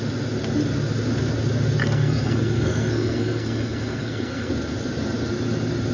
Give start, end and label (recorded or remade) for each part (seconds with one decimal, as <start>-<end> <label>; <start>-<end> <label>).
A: 0.0-1.8 recorded; 1.8-4.5 remade; 4.5-5.9 recorded